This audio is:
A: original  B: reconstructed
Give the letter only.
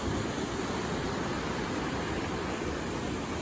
A